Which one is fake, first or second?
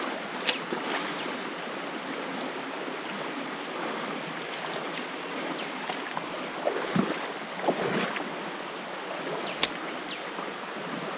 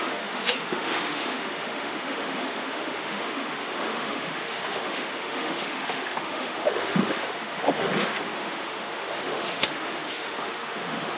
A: second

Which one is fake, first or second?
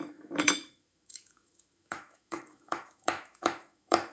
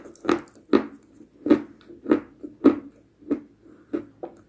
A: first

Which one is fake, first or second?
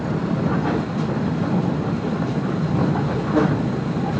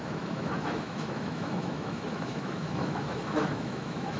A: second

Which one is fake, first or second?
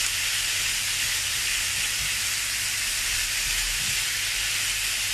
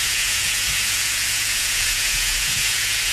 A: second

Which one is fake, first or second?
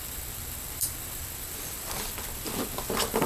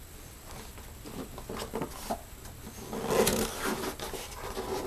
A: first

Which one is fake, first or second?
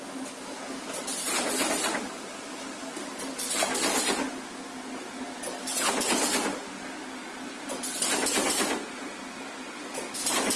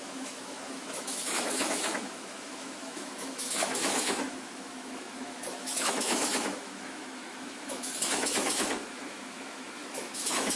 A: second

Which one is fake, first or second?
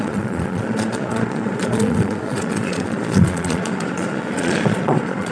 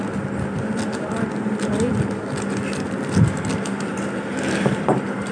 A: first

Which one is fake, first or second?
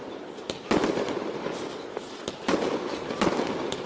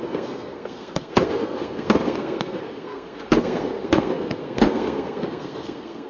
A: second